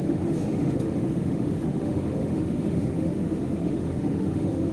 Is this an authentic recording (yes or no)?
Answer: no